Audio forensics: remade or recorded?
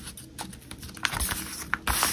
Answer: recorded